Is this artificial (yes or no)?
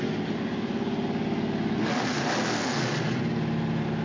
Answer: no